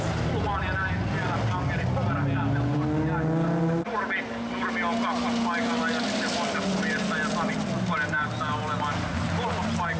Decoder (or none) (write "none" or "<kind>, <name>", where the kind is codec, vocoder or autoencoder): none